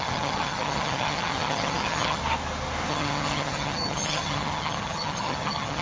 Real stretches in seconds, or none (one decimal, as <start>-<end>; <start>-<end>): 2.2-2.9